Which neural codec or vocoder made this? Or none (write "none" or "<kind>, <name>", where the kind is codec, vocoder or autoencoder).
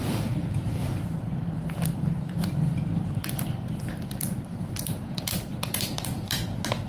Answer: vocoder, BigVGAN v2